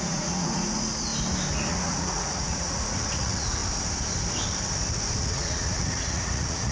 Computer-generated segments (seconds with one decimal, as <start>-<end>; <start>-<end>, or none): 0.0-1.1; 1.7-3.6; 5.2-6.7